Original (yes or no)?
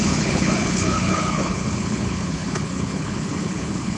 no